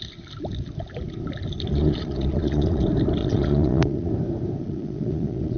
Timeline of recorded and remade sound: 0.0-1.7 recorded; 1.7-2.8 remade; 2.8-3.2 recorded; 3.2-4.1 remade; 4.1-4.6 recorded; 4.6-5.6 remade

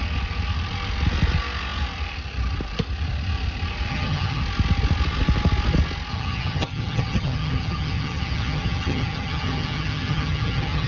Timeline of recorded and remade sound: 0.0-3.9 recorded; 3.9-4.4 remade; 4.4-6.1 recorded; 6.1-10.9 remade

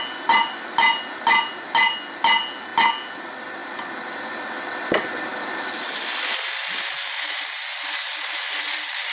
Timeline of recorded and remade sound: 0.0-9.1 recorded

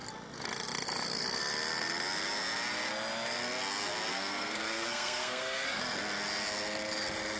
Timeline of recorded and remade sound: 0.0-4.1 recorded; 4.1-5.8 remade; 5.8-7.4 recorded

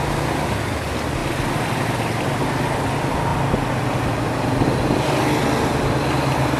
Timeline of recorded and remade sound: 0.0-6.6 recorded

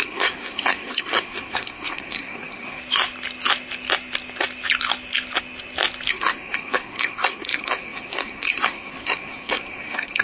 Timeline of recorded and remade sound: 0.0-2.8 remade; 2.8-6.1 recorded; 6.1-10.2 remade